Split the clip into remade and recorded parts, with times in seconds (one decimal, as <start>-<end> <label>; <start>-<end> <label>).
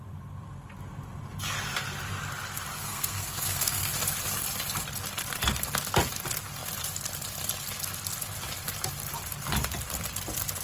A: 0.0-2.8 recorded; 2.8-3.9 remade; 3.9-10.6 recorded